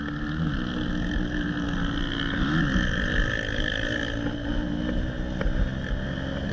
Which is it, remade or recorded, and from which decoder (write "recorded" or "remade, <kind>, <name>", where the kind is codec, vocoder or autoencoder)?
recorded